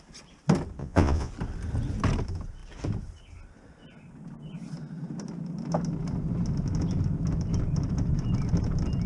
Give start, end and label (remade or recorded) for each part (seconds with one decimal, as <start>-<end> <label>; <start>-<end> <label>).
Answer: 0.0-0.8 recorded; 0.8-1.3 remade; 1.3-9.1 recorded